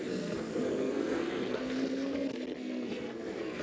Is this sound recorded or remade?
remade